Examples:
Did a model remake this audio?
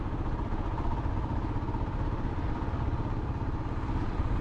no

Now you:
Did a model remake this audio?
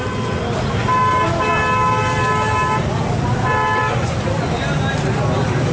no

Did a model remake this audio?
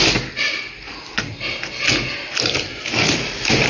no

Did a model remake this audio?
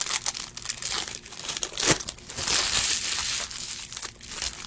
no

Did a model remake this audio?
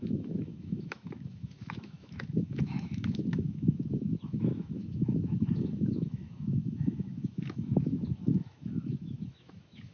yes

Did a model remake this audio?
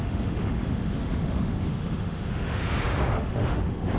yes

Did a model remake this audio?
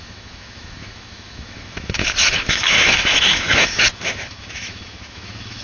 yes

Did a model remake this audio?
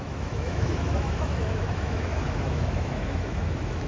yes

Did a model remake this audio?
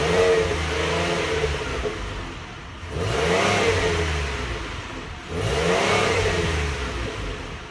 no